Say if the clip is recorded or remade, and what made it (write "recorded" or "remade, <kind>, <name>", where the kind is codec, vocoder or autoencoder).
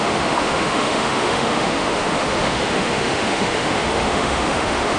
remade, autoencoder, DAC-VAE